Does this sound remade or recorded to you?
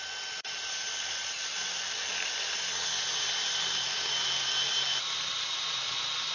recorded